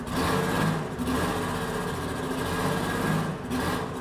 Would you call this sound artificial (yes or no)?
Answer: no